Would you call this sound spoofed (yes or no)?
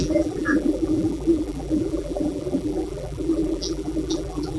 yes